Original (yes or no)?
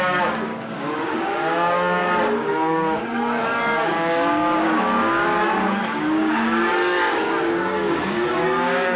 no